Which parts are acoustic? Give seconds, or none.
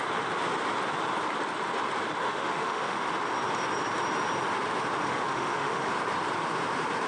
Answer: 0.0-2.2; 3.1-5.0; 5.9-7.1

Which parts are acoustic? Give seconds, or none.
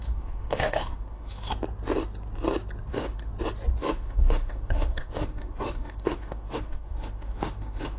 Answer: 1.5-2.9; 3.3-3.8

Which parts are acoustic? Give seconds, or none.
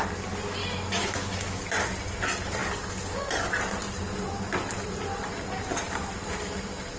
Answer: 0.0-1.0; 1.6-7.0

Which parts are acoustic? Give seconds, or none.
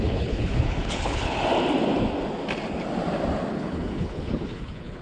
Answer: 1.4-3.5